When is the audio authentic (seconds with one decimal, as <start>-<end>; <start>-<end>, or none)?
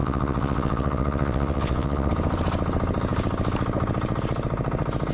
2.1-5.1